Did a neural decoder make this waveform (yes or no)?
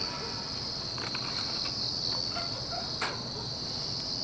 no